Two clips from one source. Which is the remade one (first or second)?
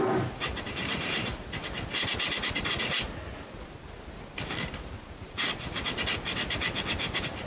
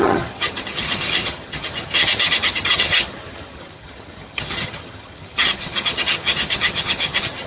second